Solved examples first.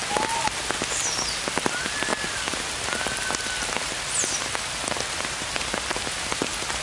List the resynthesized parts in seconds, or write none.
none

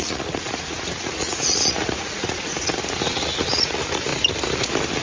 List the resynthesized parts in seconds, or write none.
0.0-2.5 (vocoder, Vocos); 3.0-4.1